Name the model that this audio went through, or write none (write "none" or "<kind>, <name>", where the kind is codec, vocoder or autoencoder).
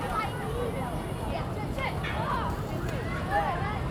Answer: none